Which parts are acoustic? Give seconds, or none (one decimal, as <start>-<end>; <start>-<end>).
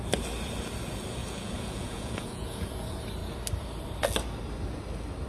0.0-1.2; 2.7-5.3